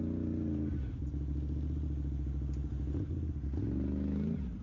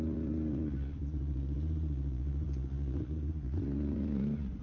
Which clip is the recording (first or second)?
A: first